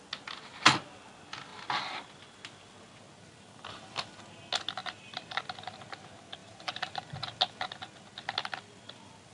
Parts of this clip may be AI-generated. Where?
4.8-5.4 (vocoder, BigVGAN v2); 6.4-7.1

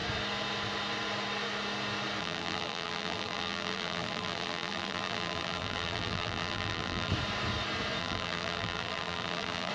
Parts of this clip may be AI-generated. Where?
2.2-7.1 (vocoder, BigVGAN v2); 8.0-9.7

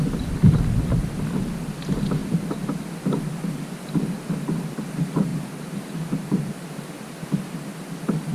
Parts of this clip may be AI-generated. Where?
5.3-6.8 (vocoder, BigVGAN v2)

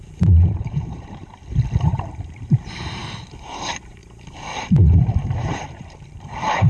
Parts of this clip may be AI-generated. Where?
0.0-1.2 (vocoder, BigVGAN v2); 1.8-4.0; 5.5-6.7

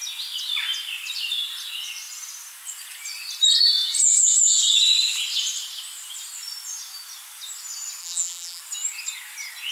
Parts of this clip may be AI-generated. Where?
8.0-8.6 (vocoder, BigVGAN v2)

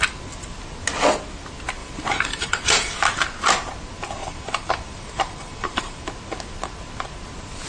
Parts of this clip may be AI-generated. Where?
1.8-2.9 (vocoder, BigVGAN v2); 4.2-6.0

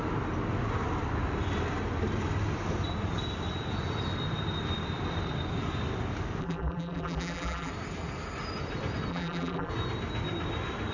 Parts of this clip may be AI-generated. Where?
6.4-7.7 (vocoder, BigVGAN v2); 9.1-9.7